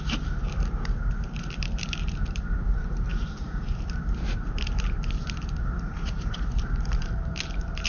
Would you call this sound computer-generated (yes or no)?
yes